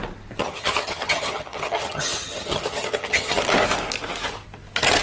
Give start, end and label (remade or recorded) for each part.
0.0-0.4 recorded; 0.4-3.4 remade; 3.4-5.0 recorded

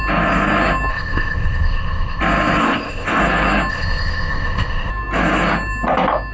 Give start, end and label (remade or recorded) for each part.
0.0-0.9 recorded; 0.9-2.2 remade; 2.2-2.6 recorded; 2.6-3.2 remade; 3.2-3.7 recorded; 3.7-4.9 remade; 4.9-6.3 recorded

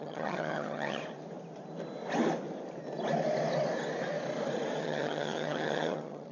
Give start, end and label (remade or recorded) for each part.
0.0-1.0 remade; 1.0-4.8 recorded; 4.8-6.3 remade

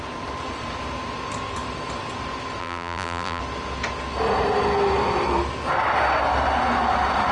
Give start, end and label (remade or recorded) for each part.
0.0-2.6 recorded; 2.6-3.4 remade; 3.4-7.3 recorded

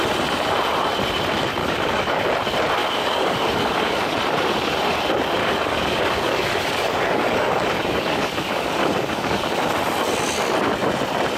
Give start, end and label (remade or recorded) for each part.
0.0-1.6 recorded; 1.6-2.2 remade; 2.2-2.8 recorded; 2.8-4.1 remade; 4.1-5.4 recorded; 5.4-9.7 remade; 9.7-11.4 recorded